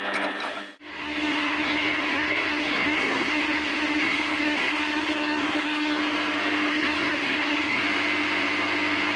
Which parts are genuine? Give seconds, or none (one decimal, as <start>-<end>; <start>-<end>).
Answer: 0.0-0.9; 6.0-6.7; 7.8-9.2